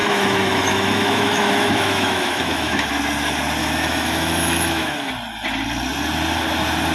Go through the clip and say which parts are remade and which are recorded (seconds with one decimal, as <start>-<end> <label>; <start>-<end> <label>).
0.0-2.9 remade; 2.9-3.6 recorded; 3.6-5.1 remade; 5.1-6.9 recorded